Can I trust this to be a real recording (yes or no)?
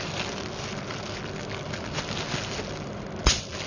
yes